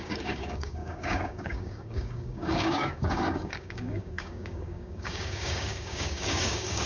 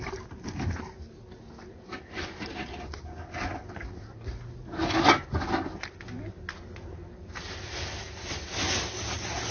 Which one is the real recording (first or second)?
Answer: second